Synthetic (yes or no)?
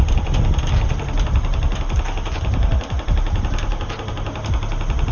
no